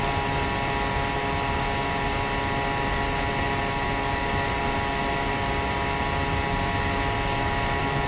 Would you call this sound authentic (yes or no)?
yes